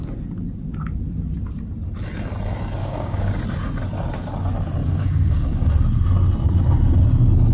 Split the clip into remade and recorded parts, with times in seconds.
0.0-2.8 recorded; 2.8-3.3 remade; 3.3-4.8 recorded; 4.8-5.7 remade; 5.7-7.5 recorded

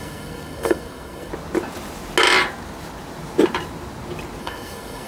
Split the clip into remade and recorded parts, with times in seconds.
0.0-1.3 remade; 1.3-4.4 recorded; 4.4-5.1 remade